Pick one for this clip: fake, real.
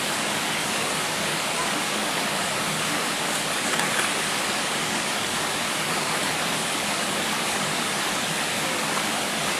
fake